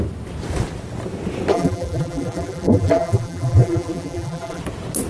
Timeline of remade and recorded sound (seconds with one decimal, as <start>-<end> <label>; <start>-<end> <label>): 0.0-1.5 recorded; 1.5-4.6 remade; 4.6-5.1 recorded